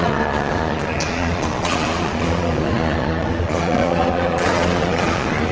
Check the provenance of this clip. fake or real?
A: fake